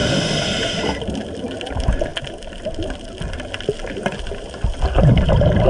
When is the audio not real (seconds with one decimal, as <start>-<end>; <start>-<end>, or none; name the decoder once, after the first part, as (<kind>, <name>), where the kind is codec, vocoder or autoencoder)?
none